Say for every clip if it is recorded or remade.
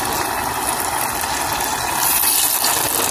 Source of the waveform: recorded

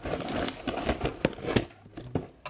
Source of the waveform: recorded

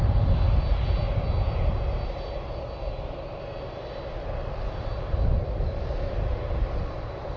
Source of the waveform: recorded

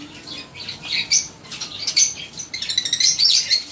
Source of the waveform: recorded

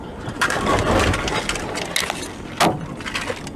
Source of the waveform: recorded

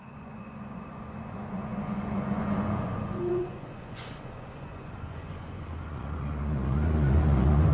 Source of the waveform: remade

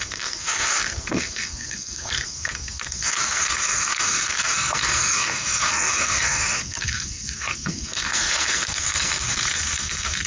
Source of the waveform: remade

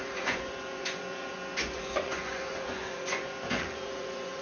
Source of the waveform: remade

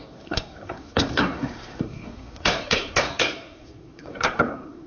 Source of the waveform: remade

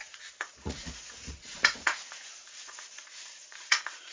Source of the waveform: remade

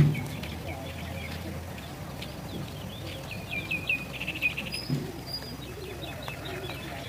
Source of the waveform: remade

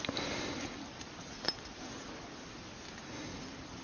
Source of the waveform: recorded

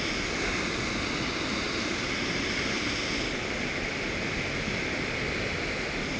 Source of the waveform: recorded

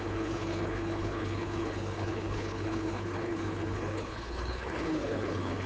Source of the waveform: remade